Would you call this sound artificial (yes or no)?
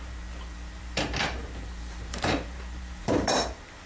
yes